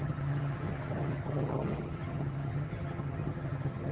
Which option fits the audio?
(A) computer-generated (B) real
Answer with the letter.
A